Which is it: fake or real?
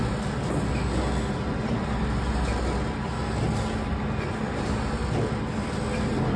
real